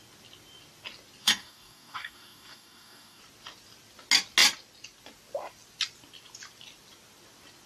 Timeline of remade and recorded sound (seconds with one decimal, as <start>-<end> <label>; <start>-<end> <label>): 0.0-1.2 recorded; 1.2-3.2 remade; 3.2-7.7 recorded